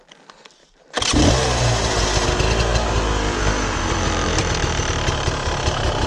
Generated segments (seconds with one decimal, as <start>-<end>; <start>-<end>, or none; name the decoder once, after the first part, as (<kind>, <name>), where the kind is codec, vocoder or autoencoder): 0.6-2.0 (vocoder, BigVGAN v2); 2.7-6.1